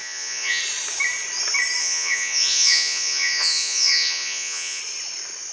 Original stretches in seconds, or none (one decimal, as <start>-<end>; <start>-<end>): 0.6-1.8; 4.8-5.5